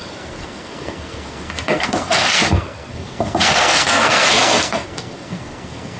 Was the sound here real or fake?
fake